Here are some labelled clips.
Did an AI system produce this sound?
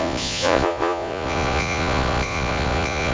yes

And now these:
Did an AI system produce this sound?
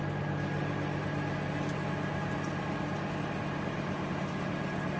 no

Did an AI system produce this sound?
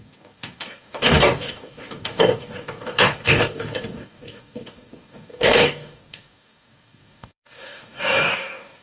yes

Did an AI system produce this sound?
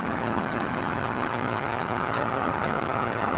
yes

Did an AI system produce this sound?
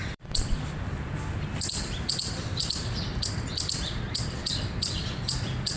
yes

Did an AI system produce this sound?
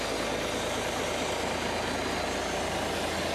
no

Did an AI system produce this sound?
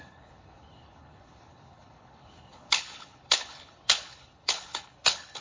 yes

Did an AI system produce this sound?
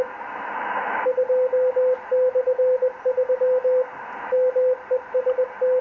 no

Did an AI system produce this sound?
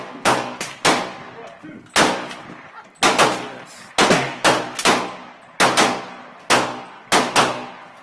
no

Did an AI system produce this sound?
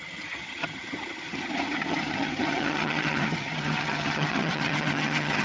yes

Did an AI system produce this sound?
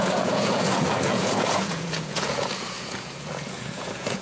yes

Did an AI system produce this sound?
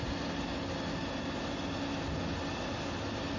no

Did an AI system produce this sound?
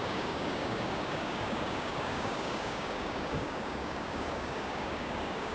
yes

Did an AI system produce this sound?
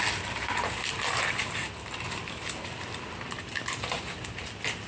no